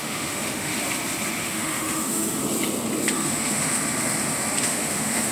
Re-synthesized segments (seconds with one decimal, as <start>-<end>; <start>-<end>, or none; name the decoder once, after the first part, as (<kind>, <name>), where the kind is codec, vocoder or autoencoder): 0.0-0.7 (autoencoder, DAC-VAE); 1.4-2.4; 3.1-3.8; 4.6-5.3